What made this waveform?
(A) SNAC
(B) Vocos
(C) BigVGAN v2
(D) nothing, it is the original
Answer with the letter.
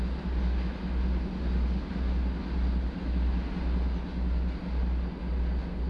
D